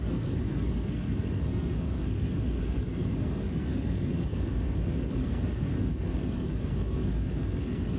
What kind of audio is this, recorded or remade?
remade